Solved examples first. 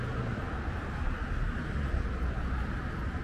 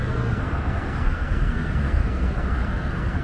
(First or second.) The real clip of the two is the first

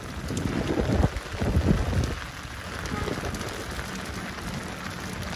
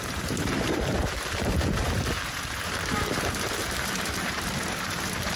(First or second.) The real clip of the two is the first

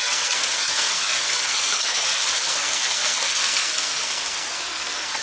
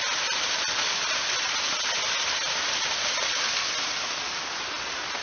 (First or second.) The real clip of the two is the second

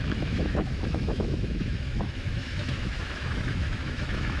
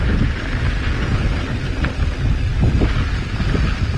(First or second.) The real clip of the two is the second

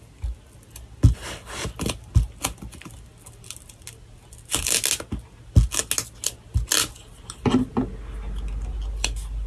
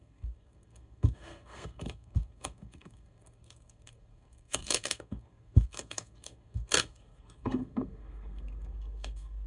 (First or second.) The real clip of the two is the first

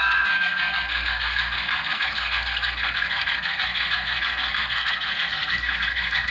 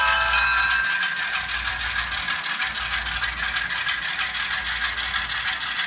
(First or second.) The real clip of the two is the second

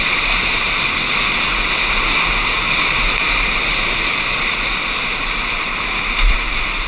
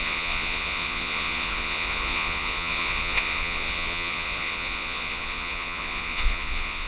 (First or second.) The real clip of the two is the first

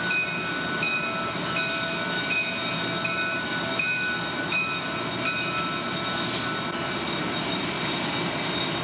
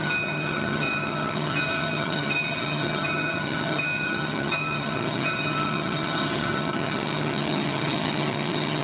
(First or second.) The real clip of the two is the first